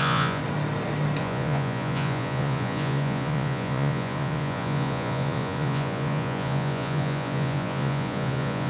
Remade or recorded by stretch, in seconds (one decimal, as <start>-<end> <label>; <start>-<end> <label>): 0.0-0.4 remade; 0.4-1.2 recorded; 1.2-8.7 remade